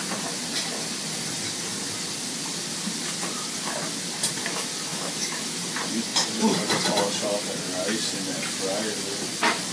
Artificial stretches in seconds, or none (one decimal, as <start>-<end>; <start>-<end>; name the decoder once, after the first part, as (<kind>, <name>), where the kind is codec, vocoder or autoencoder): 4.9-5.6 (autoencoder, DAC-VAE)